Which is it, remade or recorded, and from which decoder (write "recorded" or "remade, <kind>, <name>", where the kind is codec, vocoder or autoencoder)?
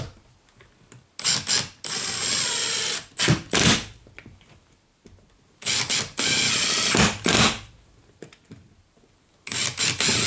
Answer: recorded